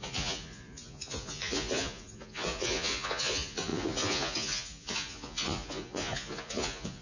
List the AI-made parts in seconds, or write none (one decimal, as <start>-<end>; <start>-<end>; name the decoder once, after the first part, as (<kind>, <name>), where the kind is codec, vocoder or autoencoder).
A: 0.0-7.0 (vocoder, Vocos)

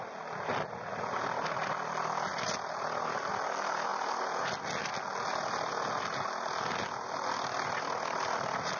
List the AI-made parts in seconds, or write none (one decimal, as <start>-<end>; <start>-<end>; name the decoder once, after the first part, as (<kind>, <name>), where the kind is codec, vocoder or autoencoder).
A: none

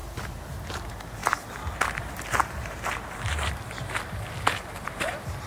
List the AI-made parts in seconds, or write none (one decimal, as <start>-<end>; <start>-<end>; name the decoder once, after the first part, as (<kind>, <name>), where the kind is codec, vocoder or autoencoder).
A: 0.0-5.5 (vocoder, BigVGAN v2)

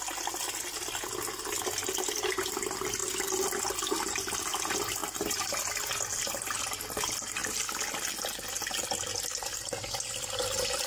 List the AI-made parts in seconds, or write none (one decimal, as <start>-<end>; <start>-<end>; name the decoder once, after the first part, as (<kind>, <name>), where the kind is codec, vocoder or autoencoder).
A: none

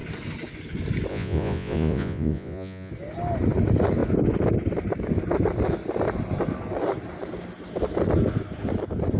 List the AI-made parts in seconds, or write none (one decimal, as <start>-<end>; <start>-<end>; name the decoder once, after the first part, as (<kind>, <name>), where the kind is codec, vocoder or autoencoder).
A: 1.1-2.9 (vocoder, Vocos)

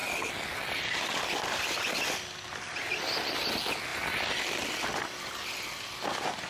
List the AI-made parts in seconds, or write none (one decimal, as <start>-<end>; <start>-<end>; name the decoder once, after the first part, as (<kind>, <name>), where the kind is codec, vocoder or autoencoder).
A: none

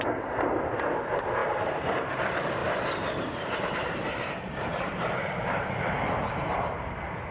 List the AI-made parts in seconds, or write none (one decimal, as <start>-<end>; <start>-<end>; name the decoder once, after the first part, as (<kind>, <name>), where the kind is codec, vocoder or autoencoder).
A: 1.4-1.9 (vocoder, BigVGAN v2); 2.6-6.0